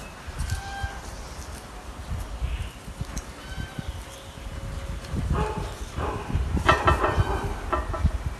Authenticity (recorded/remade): recorded